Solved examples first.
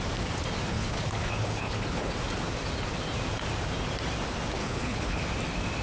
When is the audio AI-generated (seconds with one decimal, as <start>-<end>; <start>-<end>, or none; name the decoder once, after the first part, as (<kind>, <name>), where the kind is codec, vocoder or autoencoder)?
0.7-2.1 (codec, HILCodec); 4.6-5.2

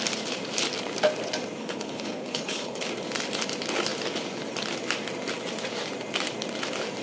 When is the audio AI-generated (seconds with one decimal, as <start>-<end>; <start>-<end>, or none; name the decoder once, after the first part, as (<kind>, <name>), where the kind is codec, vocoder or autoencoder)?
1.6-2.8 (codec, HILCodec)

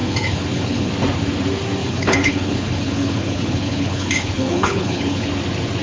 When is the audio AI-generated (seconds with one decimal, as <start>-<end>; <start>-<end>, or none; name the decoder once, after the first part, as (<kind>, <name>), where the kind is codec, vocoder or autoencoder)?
0.0-0.9 (codec, HILCodec); 1.8-5.3